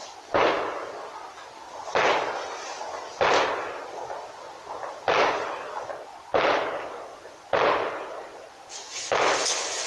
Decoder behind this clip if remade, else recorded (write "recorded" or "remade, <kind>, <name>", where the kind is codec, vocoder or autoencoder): recorded